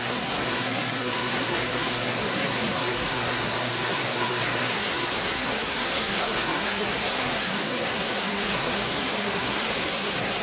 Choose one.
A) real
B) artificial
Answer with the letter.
B